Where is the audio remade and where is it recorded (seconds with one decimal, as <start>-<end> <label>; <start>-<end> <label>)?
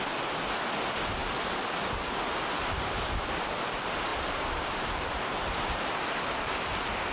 0.0-4.1 recorded; 4.1-6.5 remade; 6.5-7.1 recorded